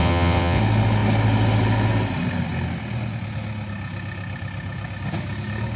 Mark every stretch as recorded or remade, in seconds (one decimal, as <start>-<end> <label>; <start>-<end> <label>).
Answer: 0.0-0.6 remade; 0.6-5.8 recorded